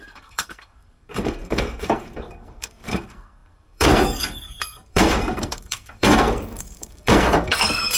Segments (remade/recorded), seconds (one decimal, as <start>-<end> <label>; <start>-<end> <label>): 0.0-8.0 remade